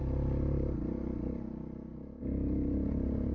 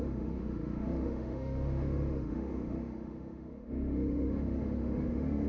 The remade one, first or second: second